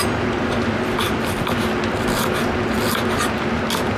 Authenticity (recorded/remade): recorded